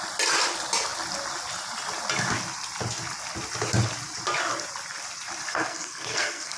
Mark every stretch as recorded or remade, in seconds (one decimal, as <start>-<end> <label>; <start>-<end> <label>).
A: 0.0-5.5 recorded; 5.5-6.6 remade